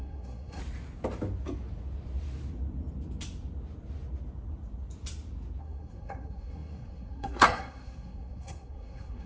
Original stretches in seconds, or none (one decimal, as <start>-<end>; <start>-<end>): 0.6-5.6